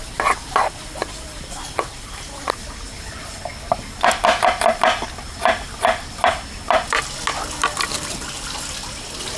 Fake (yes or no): no